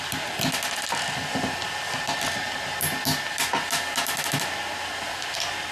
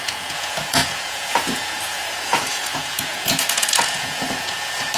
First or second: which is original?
first